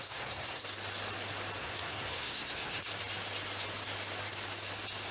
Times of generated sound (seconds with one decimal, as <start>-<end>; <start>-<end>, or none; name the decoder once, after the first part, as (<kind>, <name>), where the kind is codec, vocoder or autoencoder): 0.0-0.6 (codec, SNAC); 1.6-2.9